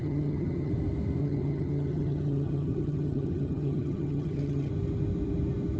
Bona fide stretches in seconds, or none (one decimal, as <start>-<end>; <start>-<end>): 0.7-1.2; 4.7-5.8